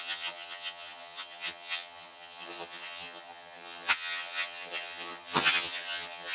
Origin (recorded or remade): remade